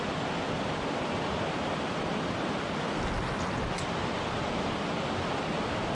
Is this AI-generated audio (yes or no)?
no